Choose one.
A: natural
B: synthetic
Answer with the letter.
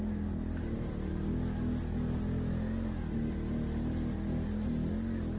A